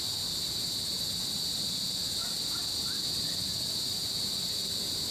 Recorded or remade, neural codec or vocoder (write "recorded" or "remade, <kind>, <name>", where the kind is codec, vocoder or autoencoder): recorded